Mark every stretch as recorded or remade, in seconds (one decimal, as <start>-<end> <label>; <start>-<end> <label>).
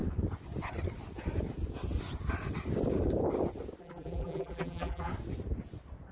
0.0-3.8 recorded; 3.8-5.1 remade; 5.1-6.1 recorded